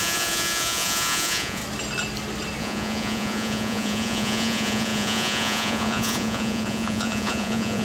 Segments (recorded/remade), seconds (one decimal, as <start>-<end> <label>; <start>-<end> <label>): 0.0-1.6 remade; 1.6-2.6 recorded; 2.6-7.8 remade